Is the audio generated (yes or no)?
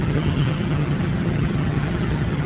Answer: yes